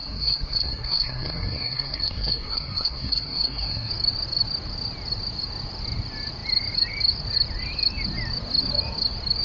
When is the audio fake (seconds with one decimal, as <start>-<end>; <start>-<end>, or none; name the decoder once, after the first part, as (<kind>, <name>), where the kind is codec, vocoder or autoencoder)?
0.0-3.9 (codec, SNAC)